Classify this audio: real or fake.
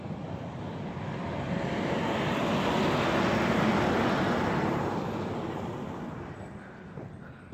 real